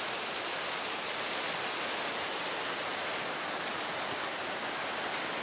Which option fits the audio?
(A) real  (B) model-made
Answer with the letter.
A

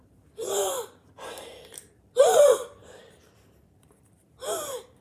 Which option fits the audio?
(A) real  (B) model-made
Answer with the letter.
B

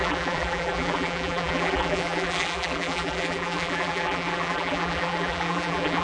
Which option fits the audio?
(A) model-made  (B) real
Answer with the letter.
A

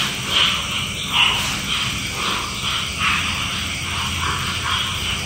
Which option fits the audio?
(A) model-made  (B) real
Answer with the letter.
B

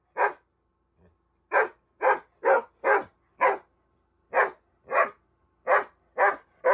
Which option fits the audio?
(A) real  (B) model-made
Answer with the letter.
A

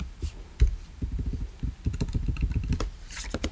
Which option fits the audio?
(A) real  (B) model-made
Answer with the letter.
B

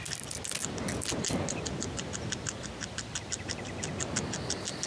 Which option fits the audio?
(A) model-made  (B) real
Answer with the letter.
B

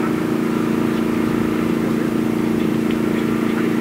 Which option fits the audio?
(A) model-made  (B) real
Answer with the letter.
B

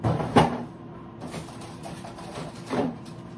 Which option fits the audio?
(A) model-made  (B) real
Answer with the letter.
A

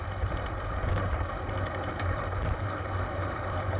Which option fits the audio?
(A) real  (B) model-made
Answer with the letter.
B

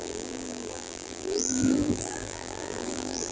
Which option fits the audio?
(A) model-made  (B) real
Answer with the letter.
A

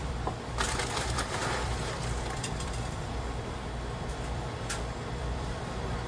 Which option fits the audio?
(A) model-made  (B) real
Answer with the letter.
A